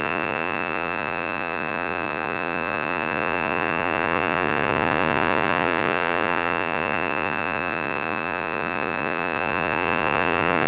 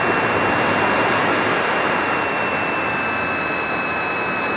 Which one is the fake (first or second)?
first